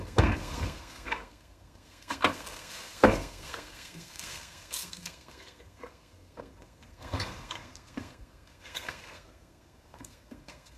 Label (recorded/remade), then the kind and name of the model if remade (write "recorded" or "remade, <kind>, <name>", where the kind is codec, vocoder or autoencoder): remade, codec, SNAC